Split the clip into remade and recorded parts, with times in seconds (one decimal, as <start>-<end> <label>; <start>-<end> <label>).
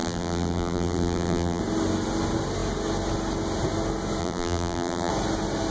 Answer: 0.0-1.6 remade; 1.6-4.2 recorded; 4.2-5.1 remade; 5.1-5.7 recorded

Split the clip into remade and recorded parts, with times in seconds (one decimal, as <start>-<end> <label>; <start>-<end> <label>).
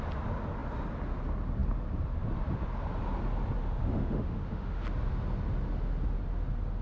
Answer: 0.0-3.6 recorded; 3.6-4.8 remade; 4.8-6.8 recorded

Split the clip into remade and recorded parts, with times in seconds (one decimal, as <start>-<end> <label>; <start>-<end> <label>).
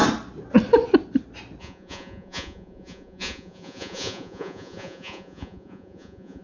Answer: 0.0-1.6 recorded; 1.6-6.4 remade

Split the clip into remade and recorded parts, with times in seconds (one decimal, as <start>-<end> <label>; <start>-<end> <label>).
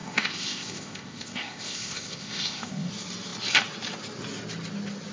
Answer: 0.0-2.9 remade; 2.9-5.1 recorded